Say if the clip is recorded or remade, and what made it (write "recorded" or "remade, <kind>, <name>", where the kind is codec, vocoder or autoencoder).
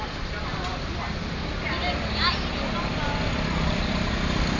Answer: recorded